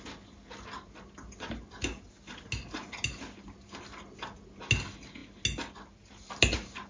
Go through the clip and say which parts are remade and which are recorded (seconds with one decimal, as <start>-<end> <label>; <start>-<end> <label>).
0.0-6.9 recorded